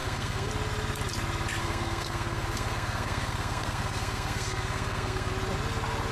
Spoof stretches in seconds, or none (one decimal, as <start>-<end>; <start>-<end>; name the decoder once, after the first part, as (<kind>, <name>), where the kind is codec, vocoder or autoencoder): 0.0-0.5 (codec, SNAC); 1.6-5.3